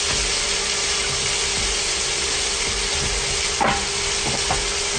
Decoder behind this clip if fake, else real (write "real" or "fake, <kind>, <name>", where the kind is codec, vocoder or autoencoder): real